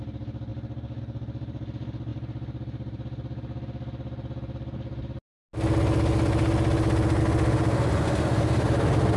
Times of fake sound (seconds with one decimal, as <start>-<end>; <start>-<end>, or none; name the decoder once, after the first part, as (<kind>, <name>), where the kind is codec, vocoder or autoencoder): none

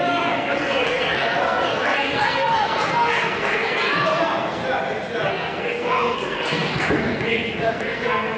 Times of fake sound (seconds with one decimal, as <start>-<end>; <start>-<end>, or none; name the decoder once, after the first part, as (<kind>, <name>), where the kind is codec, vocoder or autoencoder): 0.0-4.6 (codec, SNAC); 5.3-8.4